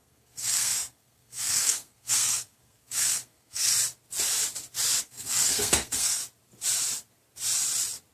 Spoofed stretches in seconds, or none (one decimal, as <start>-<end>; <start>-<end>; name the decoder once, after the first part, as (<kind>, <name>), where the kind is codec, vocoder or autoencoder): 0.0-3.7 (codec, SNAC); 5.0-6.2